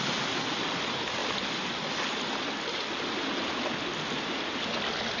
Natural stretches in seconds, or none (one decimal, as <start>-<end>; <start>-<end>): 0.0-5.2